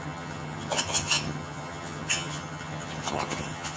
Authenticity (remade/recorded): remade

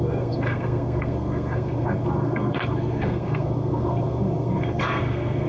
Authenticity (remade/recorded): remade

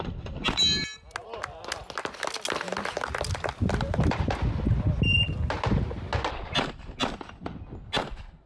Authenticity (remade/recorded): recorded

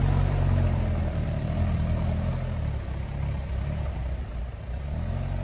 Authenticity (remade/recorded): remade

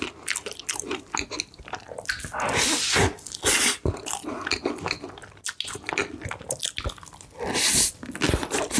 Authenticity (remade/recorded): recorded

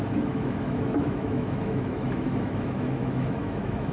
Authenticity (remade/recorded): remade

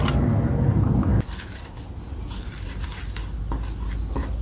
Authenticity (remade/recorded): recorded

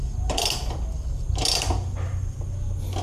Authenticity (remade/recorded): recorded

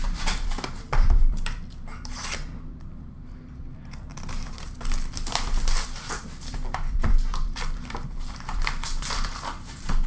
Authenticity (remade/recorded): remade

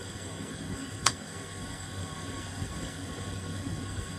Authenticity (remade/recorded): remade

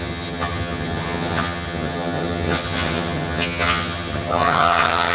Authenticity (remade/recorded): remade